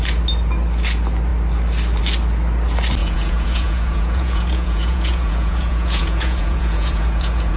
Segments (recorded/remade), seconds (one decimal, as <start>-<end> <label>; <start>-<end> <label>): 0.0-3.0 recorded; 3.0-7.6 remade